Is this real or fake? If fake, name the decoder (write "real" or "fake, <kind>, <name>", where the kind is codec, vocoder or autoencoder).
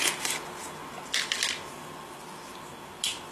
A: real